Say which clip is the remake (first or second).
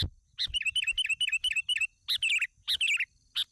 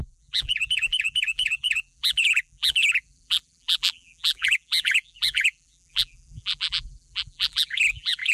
second